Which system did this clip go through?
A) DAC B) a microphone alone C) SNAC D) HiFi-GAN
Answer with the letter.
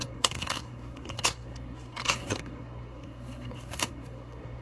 C